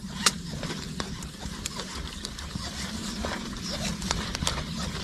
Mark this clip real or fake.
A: fake